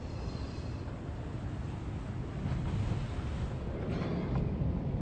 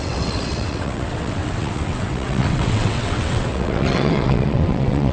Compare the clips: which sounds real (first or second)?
first